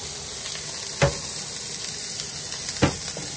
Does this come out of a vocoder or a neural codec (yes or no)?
no